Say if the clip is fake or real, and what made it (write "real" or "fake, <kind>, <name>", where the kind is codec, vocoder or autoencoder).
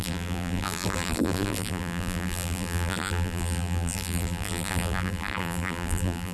fake, vocoder, BigVGAN v2